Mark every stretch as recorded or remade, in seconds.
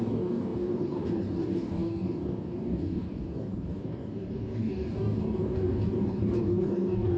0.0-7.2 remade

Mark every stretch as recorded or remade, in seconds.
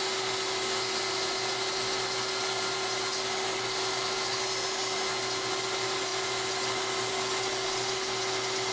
0.0-8.7 recorded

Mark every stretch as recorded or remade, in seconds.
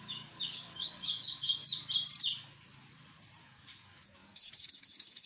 0.0-1.6 remade; 1.6-3.4 recorded; 3.4-5.3 remade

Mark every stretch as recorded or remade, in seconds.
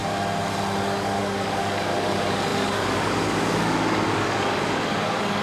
0.0-0.8 recorded; 0.8-5.4 remade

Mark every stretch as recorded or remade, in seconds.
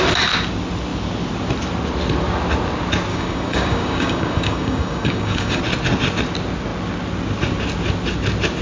0.0-3.1 recorded; 3.1-5.6 remade; 5.6-8.6 recorded